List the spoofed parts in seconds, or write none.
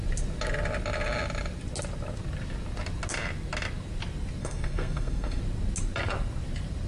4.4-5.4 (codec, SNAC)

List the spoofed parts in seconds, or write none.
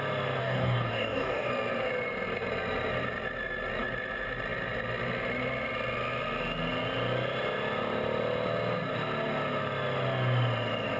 0.4-1.5 (codec, DAC)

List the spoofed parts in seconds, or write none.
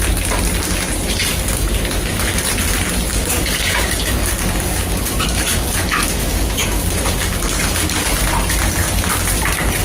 1.3-2.5 (codec, DAC); 3.1-8.1